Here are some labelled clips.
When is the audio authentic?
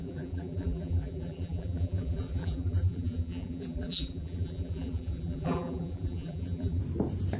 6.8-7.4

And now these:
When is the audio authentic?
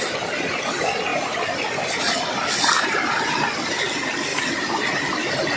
0.0-5.6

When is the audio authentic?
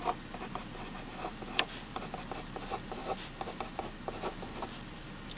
0.0-5.4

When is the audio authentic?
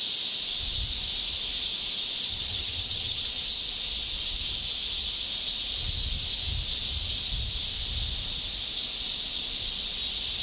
0.0-2.3; 3.2-10.4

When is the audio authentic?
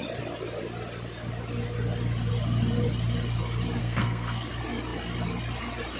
0.0-3.8; 4.5-6.0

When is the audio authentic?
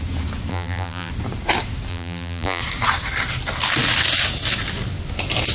0.0-0.5; 1.1-1.9; 2.6-5.5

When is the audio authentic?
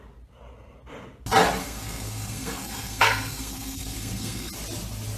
0.0-1.6; 4.5-5.2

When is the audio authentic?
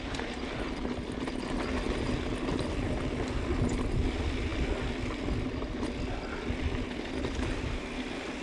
0.0-8.4